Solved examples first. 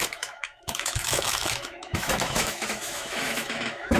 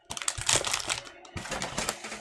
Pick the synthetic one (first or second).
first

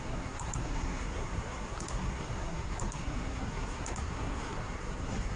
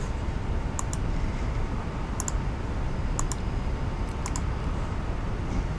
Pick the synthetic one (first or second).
first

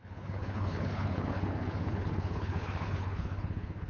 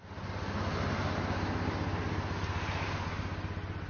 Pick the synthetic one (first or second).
first